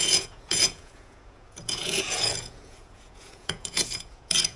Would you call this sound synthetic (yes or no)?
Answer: yes